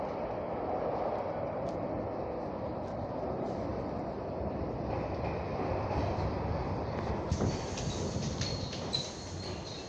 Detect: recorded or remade recorded